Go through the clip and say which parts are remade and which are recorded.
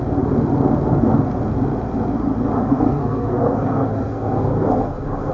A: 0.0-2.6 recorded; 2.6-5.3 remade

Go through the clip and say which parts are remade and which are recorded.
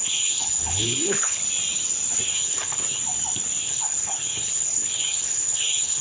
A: 0.0-1.4 remade; 1.4-2.3 recorded; 2.3-3.0 remade; 3.0-3.6 recorded; 3.6-6.0 remade